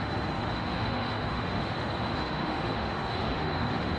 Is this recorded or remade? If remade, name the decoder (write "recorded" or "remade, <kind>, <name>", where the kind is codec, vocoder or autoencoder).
remade, autoencoder, DAC-VAE